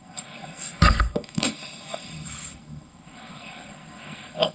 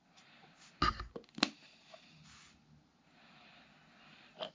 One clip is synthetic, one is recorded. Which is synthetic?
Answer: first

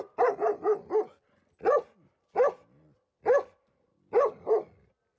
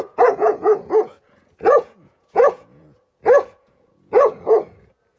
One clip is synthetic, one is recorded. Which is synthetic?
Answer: second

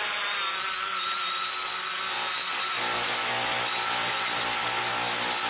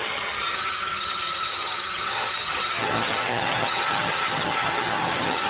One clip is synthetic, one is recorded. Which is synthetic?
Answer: second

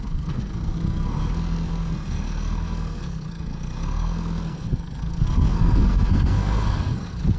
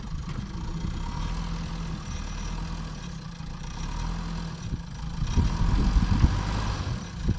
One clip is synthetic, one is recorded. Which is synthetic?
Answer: first